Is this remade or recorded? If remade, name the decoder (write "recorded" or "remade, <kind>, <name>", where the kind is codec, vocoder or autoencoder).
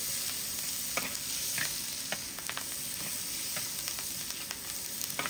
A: recorded